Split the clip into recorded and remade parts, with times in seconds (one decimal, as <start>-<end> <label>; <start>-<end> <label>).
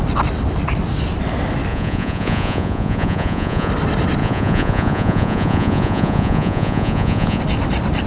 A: 0.0-1.7 recorded; 1.7-3.7 remade; 3.7-4.2 recorded; 4.2-7.4 remade; 7.4-8.1 recorded